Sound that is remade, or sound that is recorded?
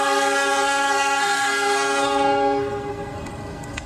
remade